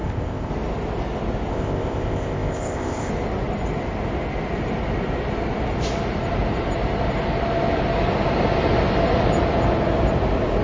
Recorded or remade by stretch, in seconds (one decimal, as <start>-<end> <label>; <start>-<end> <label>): 0.0-0.5 remade; 0.5-1.5 recorded; 1.5-3.1 remade; 3.1-10.6 recorded